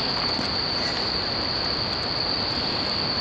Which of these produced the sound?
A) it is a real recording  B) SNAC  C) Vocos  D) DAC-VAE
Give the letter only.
A